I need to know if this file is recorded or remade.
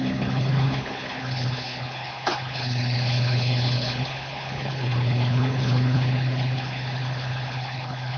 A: remade